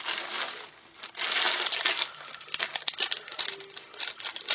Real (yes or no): yes